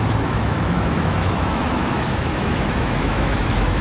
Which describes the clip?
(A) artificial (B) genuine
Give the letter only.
A